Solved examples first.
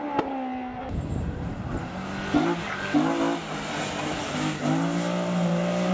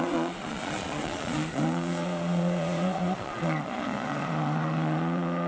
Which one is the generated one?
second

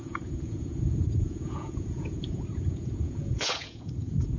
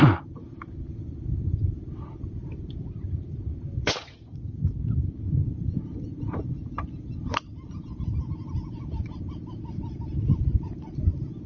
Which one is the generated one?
first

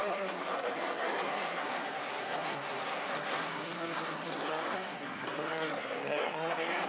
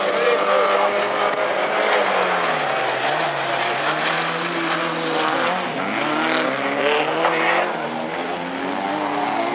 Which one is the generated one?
first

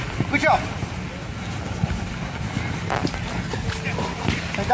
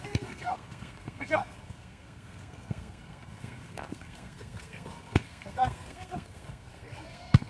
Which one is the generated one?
second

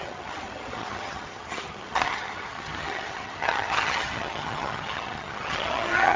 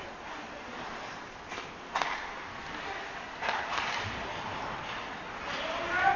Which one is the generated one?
first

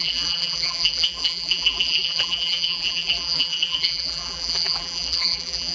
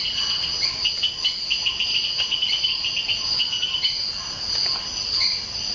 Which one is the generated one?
first